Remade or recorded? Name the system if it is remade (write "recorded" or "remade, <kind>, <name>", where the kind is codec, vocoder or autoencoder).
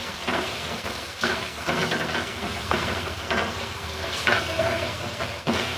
remade, codec, SNAC